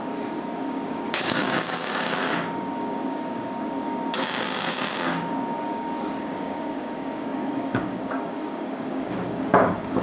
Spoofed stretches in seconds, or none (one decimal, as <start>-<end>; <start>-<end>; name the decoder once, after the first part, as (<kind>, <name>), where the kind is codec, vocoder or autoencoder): 0.0-10.0 (codec, DAC)